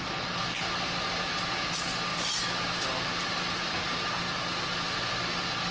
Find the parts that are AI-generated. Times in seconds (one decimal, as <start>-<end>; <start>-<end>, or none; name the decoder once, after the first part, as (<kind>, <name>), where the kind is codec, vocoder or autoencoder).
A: none